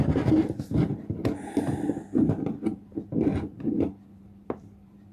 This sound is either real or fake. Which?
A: fake